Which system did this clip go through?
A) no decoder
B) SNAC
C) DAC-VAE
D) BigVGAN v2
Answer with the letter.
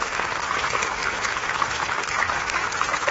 C